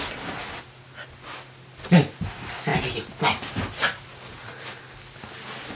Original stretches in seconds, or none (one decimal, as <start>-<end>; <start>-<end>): 0.0-5.8